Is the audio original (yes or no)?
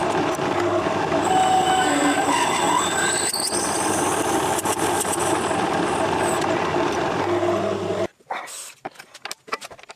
yes